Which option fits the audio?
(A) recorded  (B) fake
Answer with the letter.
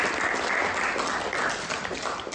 A